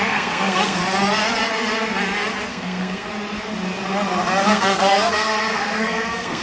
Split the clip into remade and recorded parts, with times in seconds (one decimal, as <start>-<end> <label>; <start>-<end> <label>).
0.0-0.8 remade; 0.8-2.5 recorded; 2.5-3.1 remade; 3.1-4.5 recorded; 4.5-6.4 remade